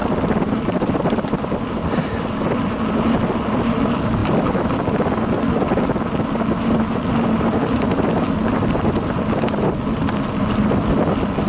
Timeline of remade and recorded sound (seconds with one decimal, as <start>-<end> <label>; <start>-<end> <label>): 0.0-11.5 recorded